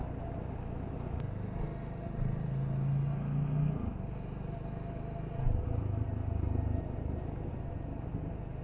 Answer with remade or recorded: recorded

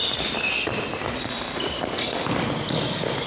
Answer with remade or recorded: recorded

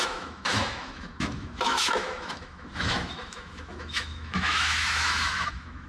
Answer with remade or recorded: remade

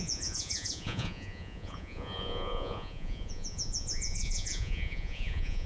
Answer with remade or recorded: remade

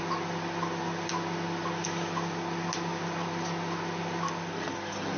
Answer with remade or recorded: recorded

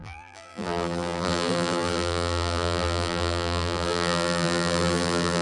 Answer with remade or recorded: remade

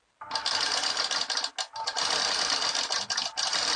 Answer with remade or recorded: recorded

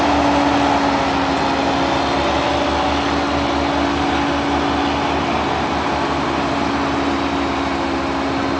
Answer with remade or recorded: recorded